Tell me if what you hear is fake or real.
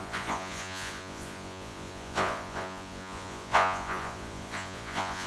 fake